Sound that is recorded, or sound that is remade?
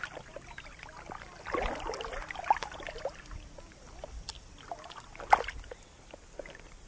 recorded